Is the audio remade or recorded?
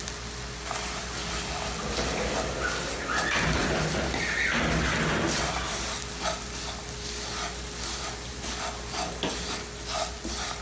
recorded